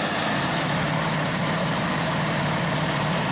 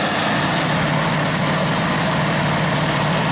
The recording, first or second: second